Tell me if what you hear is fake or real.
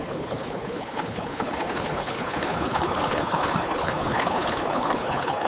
fake